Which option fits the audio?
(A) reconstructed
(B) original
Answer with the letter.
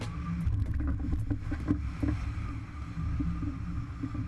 B